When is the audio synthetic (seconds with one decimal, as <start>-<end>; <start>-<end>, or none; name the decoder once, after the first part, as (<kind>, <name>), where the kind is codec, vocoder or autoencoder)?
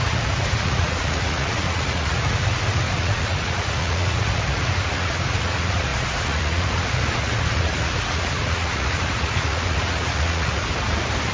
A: 0.0-10.6 (vocoder, Vocos)